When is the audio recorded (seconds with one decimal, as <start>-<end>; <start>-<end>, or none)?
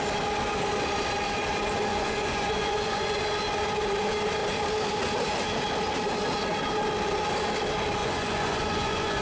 0.0-1.9; 3.2-8.0